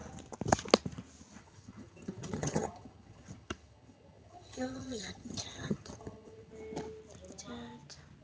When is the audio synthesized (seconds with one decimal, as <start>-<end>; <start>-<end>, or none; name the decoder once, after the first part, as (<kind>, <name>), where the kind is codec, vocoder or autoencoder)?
1.4-6.5 (vocoder, HiFi-GAN)